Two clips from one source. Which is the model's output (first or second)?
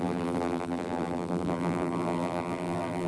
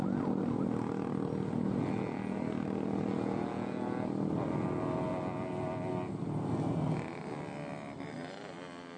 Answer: first